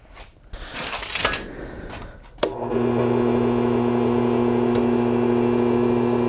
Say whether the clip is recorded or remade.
recorded